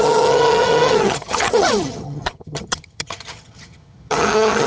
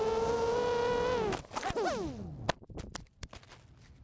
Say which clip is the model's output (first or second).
first